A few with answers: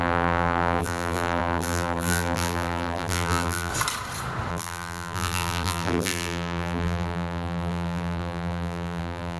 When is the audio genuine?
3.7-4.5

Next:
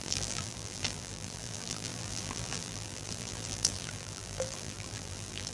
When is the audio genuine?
none

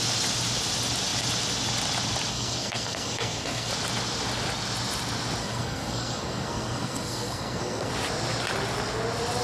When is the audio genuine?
0.0-2.3; 3.7-5.4; 7.9-9.4

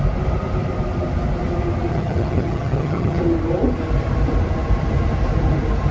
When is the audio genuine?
0.0-1.9; 3.2-5.9

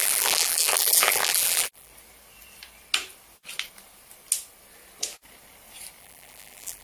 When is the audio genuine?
1.9-6.0

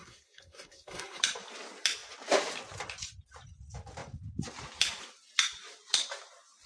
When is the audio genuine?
1.2-6.7

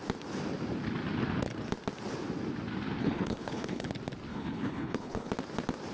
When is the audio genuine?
0.0-3.0; 3.9-4.3; 5.3-5.9